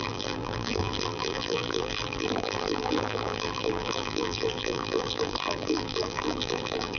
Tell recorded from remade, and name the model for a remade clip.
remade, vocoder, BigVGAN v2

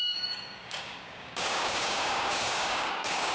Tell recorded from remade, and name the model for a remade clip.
remade, codec, DAC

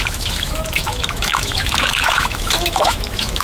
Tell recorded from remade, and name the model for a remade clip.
remade, autoencoder, DAC-VAE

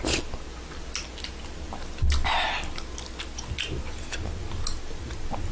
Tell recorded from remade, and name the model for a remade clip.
recorded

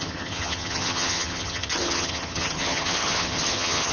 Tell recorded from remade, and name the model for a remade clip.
remade, vocoder, HiFi-GAN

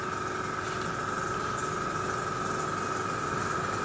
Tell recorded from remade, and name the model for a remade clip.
recorded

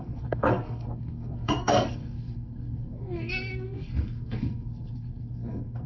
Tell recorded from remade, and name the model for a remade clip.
remade, codec, SNAC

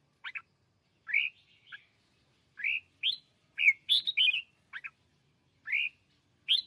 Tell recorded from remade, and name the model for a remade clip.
recorded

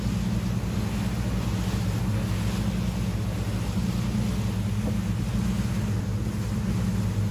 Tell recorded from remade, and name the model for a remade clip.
recorded